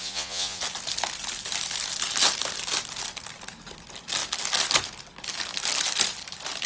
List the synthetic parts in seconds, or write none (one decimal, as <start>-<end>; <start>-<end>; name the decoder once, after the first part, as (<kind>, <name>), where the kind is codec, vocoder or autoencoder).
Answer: 0.0-0.6 (vocoder, Vocos)